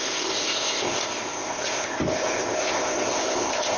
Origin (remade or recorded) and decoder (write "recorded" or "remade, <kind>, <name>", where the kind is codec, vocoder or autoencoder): remade, codec, ZipCodec